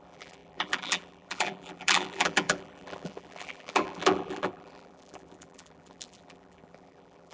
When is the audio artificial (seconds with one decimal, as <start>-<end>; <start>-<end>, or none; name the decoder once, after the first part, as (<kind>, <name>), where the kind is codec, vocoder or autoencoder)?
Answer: 0.0-7.3 (vocoder, BigVGAN v2)